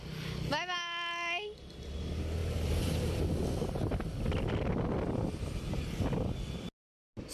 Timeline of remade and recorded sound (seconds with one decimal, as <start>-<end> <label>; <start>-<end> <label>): 0.0-2.4 recorded; 2.4-3.2 remade; 3.2-7.3 recorded

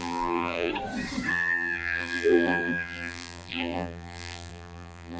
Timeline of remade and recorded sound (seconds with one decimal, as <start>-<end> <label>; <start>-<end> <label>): 0.0-0.7 remade; 0.7-1.3 recorded; 1.3-5.2 remade

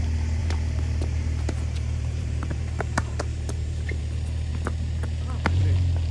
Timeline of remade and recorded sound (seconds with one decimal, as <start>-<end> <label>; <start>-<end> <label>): 0.0-0.4 recorded; 0.4-4.0 remade; 4.0-6.1 recorded

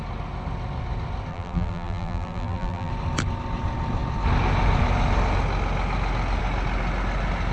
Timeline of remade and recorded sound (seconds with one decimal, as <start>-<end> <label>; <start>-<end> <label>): 0.0-1.3 recorded; 1.3-2.9 remade; 2.9-7.5 recorded

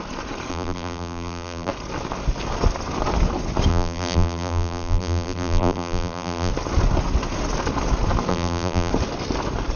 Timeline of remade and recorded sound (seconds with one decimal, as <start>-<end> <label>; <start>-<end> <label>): 0.0-0.5 recorded; 0.5-1.7 remade; 1.7-3.7 recorded; 3.7-6.5 remade; 6.5-8.3 recorded; 8.3-8.9 remade; 8.9-9.8 recorded

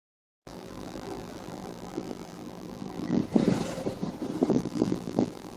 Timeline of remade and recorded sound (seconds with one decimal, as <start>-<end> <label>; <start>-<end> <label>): 0.0-3.2 remade; 3.2-4.5 recorded; 4.5-5.6 remade

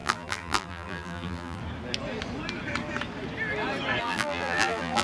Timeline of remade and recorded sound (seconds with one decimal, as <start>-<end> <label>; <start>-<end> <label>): 0.0-1.6 remade; 1.6-4.0 recorded; 4.0-5.0 remade